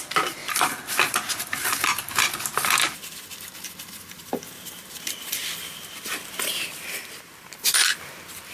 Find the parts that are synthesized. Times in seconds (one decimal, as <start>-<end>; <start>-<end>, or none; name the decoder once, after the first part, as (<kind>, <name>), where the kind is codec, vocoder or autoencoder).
none